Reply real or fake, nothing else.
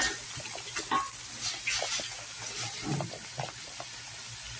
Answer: real